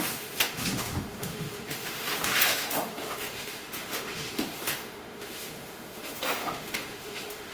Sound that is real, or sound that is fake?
fake